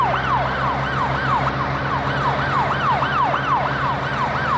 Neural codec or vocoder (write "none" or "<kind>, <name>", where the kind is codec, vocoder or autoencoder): none